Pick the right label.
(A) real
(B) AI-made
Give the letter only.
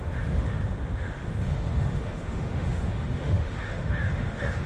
B